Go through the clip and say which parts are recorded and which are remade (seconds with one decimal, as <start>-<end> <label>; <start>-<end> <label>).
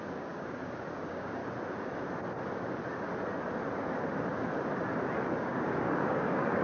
0.0-1.4 remade; 1.4-5.4 recorded; 5.4-6.6 remade